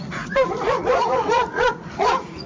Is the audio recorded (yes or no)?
no